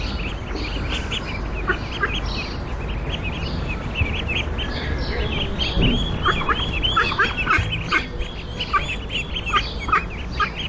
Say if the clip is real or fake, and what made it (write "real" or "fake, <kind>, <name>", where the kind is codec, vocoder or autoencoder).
real